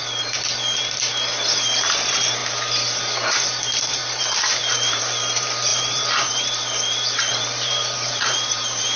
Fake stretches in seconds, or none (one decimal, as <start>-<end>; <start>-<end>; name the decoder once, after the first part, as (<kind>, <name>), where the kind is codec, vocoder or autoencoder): 0.0-2.4 (vocoder, BigVGAN v2); 3.3-9.0